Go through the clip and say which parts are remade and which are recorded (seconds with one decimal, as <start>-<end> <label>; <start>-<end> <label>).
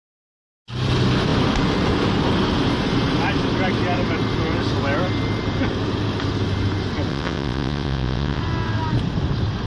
0.0-7.1 recorded; 7.1-8.4 remade; 8.4-9.7 recorded